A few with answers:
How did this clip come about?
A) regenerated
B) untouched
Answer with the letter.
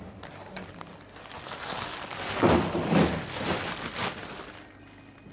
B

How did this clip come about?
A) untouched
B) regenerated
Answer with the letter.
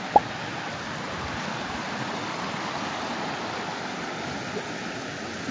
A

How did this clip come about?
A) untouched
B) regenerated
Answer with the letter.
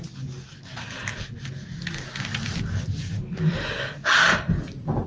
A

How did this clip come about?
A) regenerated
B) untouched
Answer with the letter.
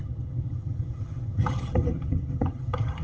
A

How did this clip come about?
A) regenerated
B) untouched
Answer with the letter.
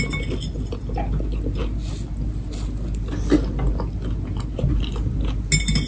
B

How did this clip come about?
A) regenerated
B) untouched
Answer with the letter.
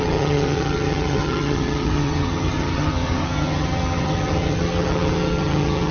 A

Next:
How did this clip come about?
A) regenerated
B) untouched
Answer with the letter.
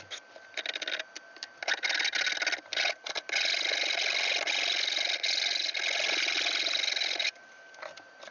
B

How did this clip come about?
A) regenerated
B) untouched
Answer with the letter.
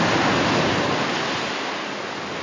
B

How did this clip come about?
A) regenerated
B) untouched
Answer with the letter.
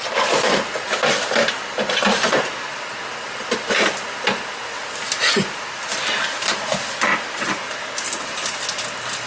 B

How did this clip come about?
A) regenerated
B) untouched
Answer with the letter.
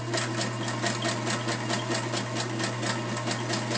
B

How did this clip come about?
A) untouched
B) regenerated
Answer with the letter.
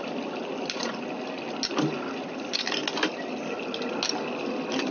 A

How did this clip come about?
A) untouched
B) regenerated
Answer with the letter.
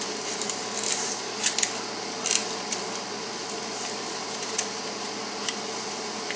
A